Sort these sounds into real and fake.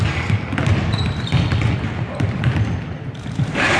real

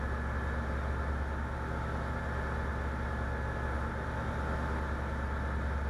real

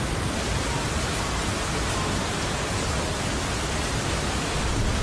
fake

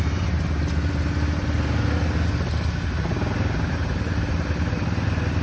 real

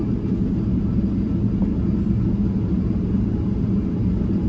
fake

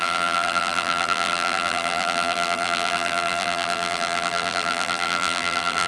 fake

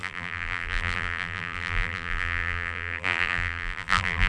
fake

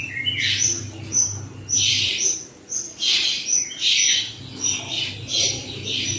real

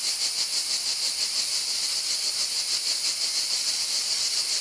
real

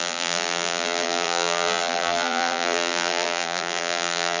fake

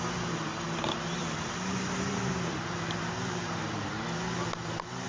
fake